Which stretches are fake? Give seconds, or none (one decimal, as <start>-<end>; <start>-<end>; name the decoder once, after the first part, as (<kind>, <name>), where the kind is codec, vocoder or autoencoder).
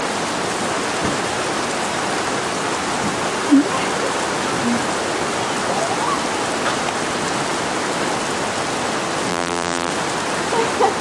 9.3-9.9 (vocoder, BigVGAN v2)